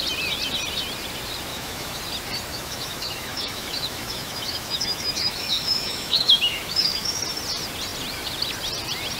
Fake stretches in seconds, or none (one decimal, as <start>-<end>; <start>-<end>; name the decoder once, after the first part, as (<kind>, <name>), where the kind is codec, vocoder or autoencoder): 1.5-2.0 (autoencoder, DAC-VAE); 2.5-7.2